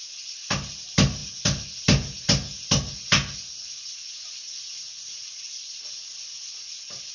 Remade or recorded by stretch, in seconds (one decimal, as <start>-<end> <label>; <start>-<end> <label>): 0.0-7.1 recorded